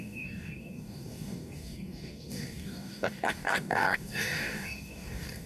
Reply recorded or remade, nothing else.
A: remade